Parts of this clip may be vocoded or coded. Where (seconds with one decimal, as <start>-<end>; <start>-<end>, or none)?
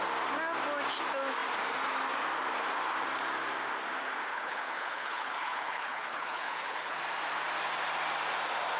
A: 4.3-7.0